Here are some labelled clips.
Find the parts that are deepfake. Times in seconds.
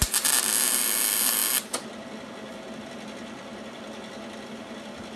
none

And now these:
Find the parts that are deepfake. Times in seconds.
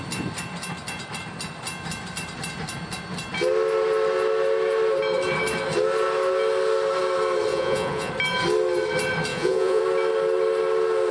7.5-8.1 (vocoder, Vocos); 9.3-9.8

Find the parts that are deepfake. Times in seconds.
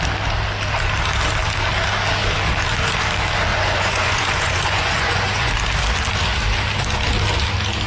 3.5-5.5 (vocoder, Vocos)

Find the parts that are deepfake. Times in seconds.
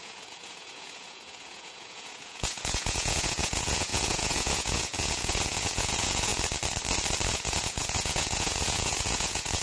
0.0-6.3 (vocoder, Vocos); 7.3-9.6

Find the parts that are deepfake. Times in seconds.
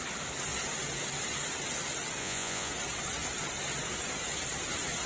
2.2-2.7 (vocoder, Vocos)